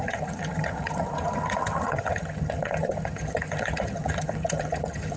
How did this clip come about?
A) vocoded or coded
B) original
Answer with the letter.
A